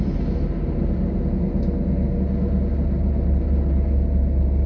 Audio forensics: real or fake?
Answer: real